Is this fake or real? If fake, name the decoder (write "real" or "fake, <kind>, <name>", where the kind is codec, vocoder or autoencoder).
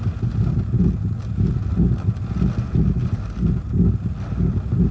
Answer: real